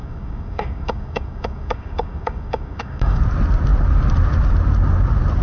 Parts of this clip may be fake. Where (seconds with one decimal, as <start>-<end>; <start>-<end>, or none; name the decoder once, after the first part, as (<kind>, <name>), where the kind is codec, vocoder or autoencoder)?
0.0-3.2 (codec, DAC)